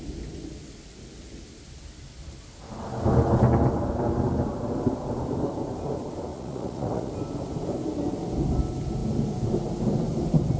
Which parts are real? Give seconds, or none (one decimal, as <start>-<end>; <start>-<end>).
0.0-6.3; 7.1-10.6